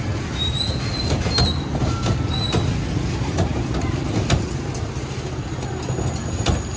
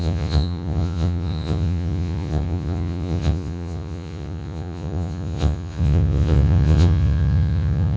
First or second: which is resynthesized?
second